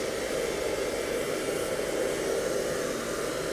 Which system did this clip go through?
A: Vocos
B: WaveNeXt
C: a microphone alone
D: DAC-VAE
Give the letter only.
C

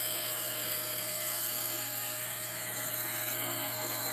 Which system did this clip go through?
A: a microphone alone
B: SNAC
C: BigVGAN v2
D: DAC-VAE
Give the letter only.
B